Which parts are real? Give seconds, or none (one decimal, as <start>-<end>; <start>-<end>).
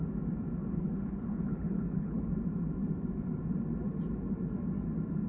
0.0-0.6; 2.3-5.3